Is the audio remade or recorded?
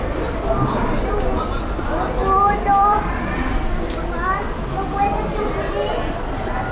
recorded